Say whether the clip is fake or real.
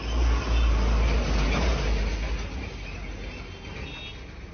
real